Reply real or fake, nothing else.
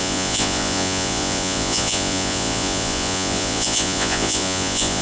fake